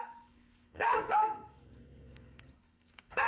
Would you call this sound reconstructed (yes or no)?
yes